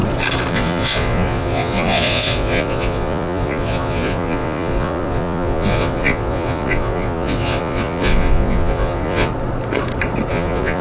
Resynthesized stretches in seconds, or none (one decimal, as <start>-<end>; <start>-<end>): 0.5-9.3; 10.3-10.8